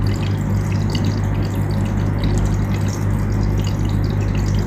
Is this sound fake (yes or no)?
no